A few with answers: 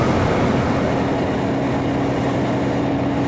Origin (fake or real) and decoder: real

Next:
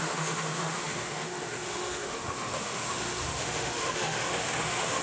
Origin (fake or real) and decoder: fake, autoencoder, DAC-VAE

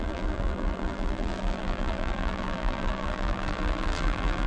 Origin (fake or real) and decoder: fake, vocoder, BigVGAN v2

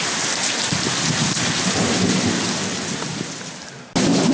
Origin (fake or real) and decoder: real